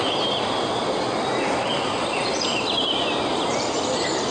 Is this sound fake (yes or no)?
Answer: no